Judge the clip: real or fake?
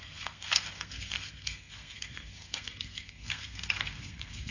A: fake